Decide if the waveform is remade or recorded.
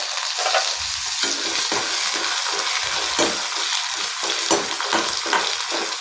recorded